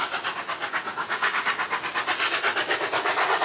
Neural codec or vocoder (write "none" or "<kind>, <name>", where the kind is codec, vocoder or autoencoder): none